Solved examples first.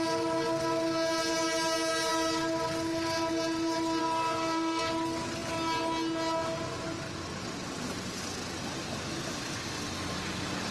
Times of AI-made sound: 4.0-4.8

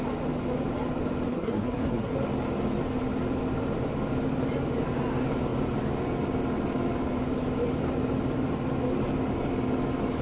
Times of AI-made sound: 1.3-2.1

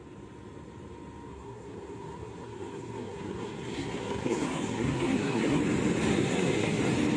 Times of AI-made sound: 1.3-5.6; 6.1-6.8

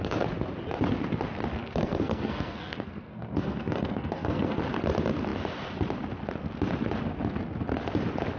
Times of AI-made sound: 1.6-4.6